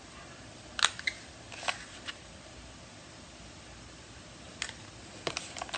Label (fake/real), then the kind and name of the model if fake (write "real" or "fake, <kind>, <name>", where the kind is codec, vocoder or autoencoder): real